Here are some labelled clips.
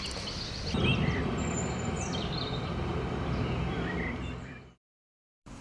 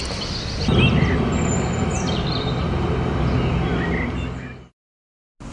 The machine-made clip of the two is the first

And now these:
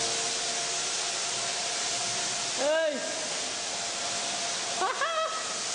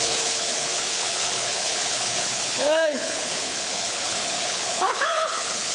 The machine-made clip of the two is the second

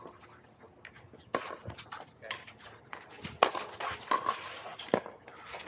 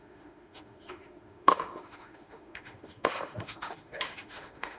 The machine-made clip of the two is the second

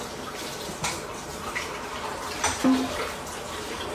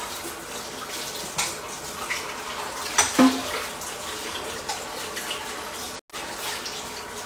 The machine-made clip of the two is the first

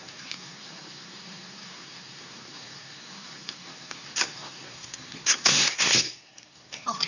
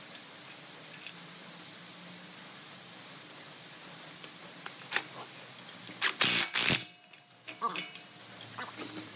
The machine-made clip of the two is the first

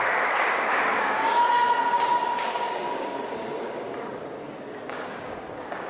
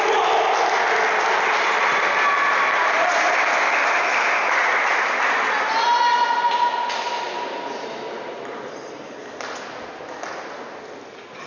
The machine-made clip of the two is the first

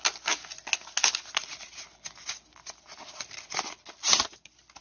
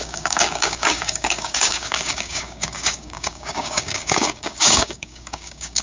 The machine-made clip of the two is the second